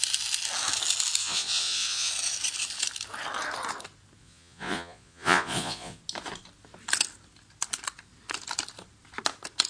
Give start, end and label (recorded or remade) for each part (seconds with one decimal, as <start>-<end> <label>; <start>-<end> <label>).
0.0-1.2 recorded; 1.2-2.1 remade; 2.1-4.2 recorded; 4.2-6.0 remade; 6.0-9.7 recorded